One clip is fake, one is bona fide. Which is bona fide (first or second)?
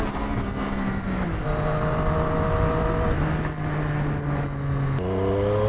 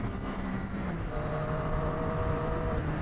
first